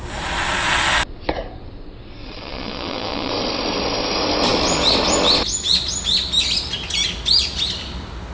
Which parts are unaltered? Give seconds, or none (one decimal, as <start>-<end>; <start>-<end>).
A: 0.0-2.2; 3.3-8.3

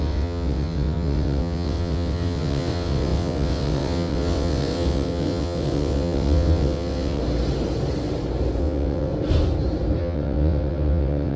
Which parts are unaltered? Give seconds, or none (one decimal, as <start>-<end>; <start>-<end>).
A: 7.2-8.6; 9.1-10.0

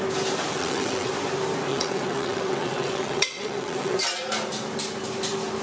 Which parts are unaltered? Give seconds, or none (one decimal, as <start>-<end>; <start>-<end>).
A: 0.0-0.5; 1.1-1.7; 4.0-5.6